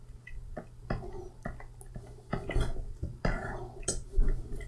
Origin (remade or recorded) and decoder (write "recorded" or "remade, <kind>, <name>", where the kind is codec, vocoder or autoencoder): recorded